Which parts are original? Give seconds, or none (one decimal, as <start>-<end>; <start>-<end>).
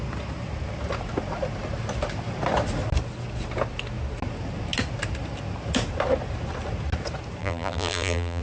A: 0.0-7.4